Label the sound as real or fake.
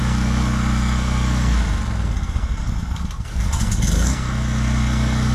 fake